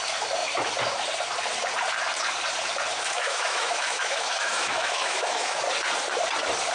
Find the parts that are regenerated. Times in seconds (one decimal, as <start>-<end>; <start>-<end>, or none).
2.9-5.6